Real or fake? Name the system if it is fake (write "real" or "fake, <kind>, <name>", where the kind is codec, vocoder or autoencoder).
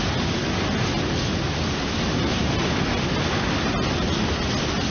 real